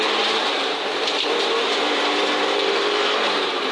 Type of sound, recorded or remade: remade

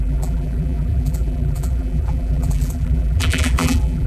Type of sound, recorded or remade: remade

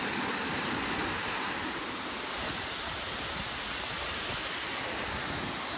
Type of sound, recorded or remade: recorded